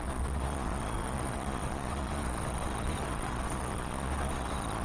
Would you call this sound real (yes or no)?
no